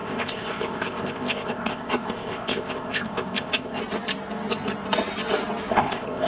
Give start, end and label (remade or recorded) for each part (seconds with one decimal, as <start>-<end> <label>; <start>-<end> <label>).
0.0-3.8 remade; 3.8-5.7 recorded; 5.7-6.3 remade